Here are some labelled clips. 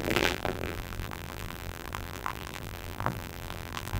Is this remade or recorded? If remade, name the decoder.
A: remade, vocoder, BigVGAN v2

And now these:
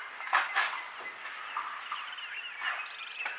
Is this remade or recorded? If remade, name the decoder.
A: recorded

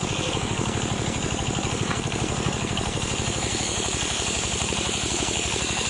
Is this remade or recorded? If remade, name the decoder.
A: remade, codec, SNAC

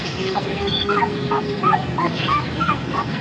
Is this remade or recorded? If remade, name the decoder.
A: remade, codec, SNAC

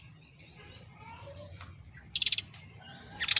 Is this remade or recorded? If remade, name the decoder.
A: recorded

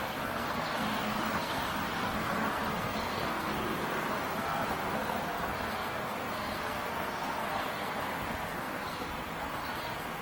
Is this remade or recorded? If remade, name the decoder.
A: remade, codec, SNAC